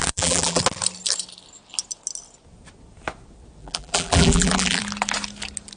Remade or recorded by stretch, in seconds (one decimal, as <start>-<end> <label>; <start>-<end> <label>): 0.0-0.6 remade; 0.6-3.6 recorded; 3.6-4.8 remade; 4.8-5.8 recorded